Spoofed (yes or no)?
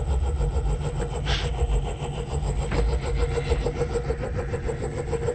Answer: no